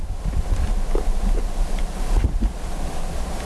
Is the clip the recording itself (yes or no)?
yes